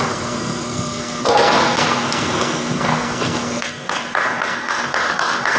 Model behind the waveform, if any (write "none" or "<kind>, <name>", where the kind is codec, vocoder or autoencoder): codec, SNAC